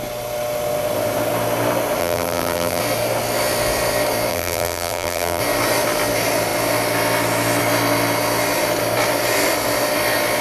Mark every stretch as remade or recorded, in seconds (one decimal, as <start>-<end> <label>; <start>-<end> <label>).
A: 0.0-2.0 recorded; 2.0-2.8 remade; 2.8-4.3 recorded; 4.3-5.4 remade; 5.4-10.4 recorded